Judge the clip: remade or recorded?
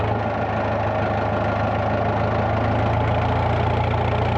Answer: recorded